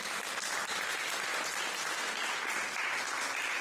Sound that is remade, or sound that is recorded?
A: recorded